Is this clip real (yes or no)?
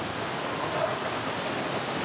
yes